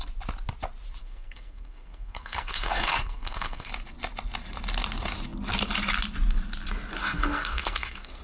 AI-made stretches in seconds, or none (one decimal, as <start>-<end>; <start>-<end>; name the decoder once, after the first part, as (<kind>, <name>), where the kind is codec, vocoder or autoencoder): 1.0-3.7 (codec, SNAC); 7.0-8.2